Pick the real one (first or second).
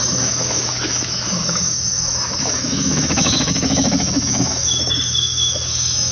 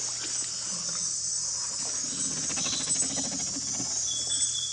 second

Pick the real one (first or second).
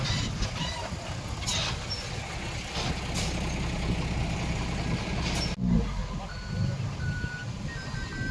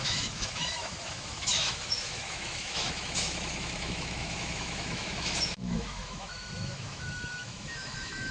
first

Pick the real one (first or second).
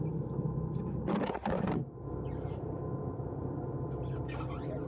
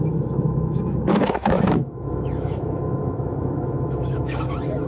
first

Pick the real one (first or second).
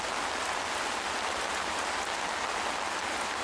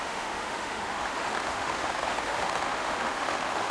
first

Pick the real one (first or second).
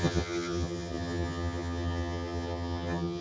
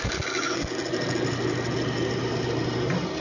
second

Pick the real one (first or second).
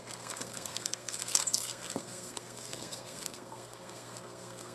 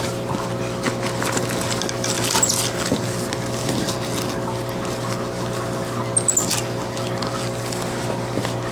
second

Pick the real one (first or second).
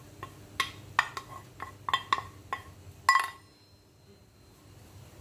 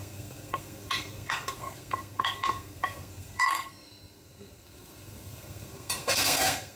first